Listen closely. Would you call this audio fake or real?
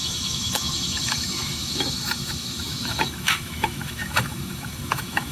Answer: fake